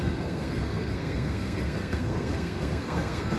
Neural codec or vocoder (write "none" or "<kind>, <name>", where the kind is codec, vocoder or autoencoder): codec, SNAC